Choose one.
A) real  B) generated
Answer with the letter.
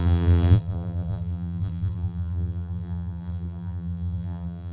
B